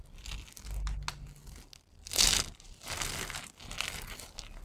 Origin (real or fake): real